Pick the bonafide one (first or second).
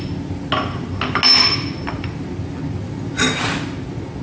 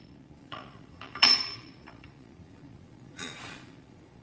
first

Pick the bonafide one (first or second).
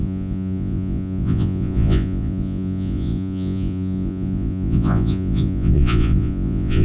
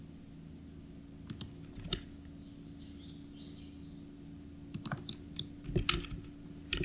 second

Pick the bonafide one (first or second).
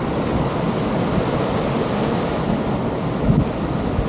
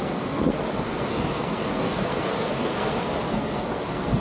first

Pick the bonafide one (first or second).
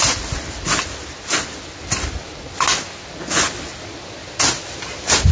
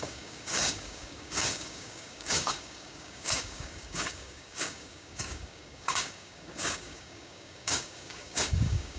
first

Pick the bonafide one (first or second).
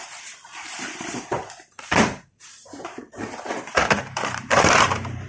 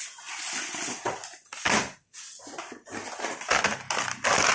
second